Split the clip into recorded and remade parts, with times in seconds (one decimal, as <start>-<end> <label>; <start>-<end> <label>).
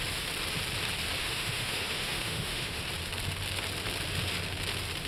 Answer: 0.0-1.2 recorded; 1.2-2.8 remade; 2.8-5.1 recorded